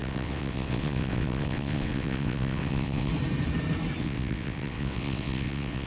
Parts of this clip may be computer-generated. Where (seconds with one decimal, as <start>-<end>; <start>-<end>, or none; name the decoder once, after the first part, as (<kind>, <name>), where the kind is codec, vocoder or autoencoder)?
0.0-3.1 (vocoder, WaveNeXt); 4.0-5.9